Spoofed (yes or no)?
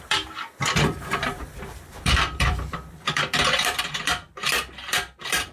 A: yes